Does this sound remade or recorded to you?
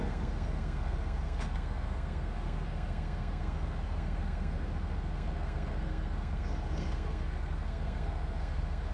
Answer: remade